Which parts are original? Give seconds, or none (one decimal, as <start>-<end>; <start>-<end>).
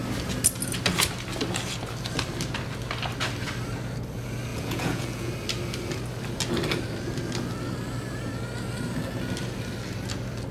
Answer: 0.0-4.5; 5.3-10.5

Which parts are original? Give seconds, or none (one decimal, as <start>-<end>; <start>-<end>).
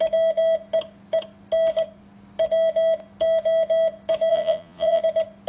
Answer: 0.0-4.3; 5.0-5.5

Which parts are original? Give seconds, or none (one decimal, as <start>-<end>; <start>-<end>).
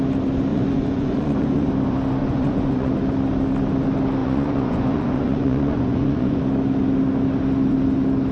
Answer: 0.0-0.5; 1.7-2.2; 2.9-4.2; 6.4-8.3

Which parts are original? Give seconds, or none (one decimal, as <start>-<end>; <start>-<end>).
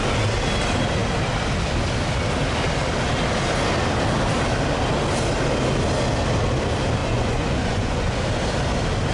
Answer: 0.0-7.0; 8.2-9.1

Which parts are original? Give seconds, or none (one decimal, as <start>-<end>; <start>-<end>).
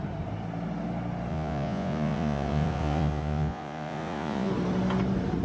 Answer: 0.0-1.3; 4.5-5.4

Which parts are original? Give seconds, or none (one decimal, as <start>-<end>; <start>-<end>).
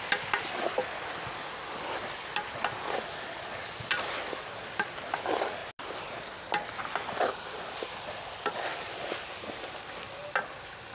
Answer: 0.0-10.9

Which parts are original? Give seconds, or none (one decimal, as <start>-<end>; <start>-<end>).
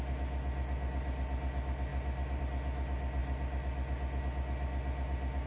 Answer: 0.0-5.5